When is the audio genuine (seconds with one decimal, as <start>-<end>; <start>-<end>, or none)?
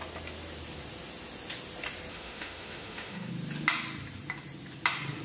0.0-2.1; 3.3-5.2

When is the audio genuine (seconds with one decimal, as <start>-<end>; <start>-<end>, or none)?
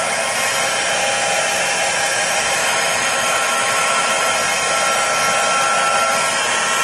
0.0-2.6; 4.1-6.8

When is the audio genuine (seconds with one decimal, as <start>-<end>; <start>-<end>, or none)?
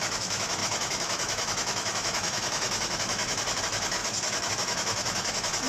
none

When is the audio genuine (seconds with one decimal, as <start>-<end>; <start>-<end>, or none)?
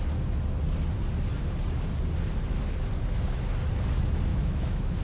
0.0-4.3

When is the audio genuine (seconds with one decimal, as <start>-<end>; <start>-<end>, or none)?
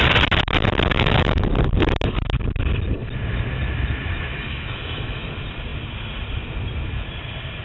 0.0-0.9; 1.5-4.3; 5.3-7.6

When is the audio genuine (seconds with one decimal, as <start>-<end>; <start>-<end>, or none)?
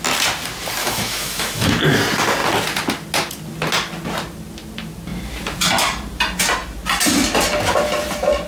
0.0-0.8; 1.7-8.5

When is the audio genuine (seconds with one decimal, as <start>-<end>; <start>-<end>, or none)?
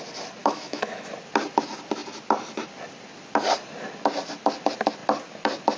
0.0-0.4; 1.1-5.8